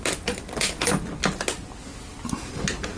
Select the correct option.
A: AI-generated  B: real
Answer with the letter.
B